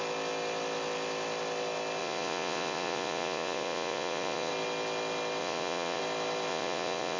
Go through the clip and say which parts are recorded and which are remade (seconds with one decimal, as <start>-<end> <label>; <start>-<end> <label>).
0.0-2.0 recorded; 2.0-4.5 remade; 4.5-5.4 recorded; 5.4-6.0 remade; 6.0-6.5 recorded; 6.5-7.2 remade